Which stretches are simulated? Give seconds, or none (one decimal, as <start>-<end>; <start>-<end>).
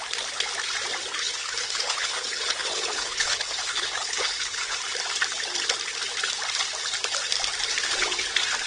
1.2-4.8